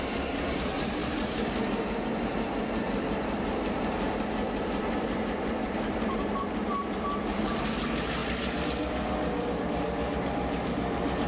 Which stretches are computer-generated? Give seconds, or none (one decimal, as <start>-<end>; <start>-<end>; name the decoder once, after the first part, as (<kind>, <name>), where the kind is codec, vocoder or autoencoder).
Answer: 0.0-8.2 (vocoder, BigVGAN v2); 9.7-11.3